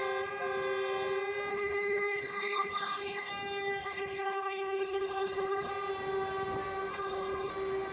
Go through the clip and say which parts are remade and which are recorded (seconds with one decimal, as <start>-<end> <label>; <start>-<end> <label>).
0.0-1.5 recorded; 1.5-3.3 remade; 3.3-3.8 recorded; 3.8-5.7 remade; 5.7-6.9 recorded; 6.9-7.5 remade; 7.5-7.9 recorded